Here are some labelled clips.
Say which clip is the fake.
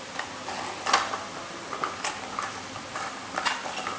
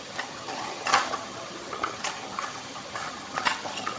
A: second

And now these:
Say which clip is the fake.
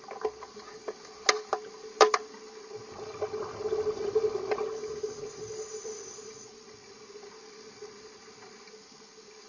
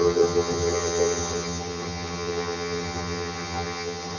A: second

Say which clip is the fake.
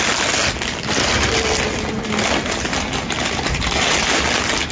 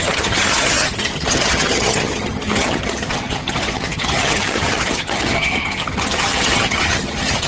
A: second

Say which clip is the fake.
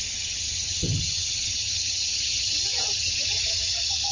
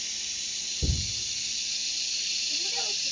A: first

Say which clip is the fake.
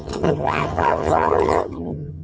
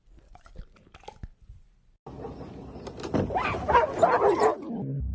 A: first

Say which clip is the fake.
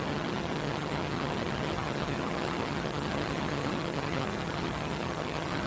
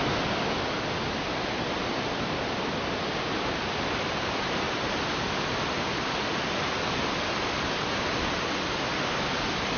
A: first